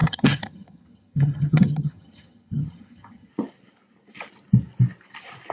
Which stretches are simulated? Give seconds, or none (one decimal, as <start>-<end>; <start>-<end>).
0.0-3.3